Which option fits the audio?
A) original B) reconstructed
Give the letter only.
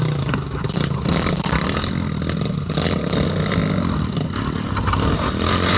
A